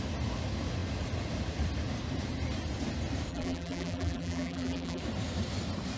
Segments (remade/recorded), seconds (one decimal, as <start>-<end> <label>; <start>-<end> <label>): 0.0-3.3 recorded; 3.3-5.0 remade; 5.0-6.0 recorded